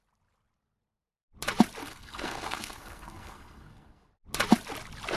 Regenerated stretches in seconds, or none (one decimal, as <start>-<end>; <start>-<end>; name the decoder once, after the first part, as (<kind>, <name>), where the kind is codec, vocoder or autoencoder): 1.8-4.1 (codec, SNAC)